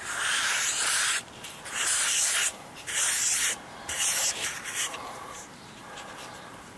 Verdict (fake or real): fake